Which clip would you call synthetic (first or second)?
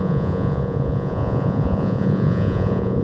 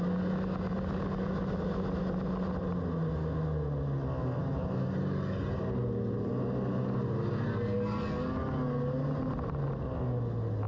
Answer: first